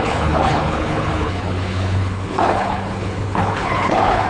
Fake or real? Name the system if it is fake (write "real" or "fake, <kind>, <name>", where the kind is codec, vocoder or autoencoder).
fake, codec, HILCodec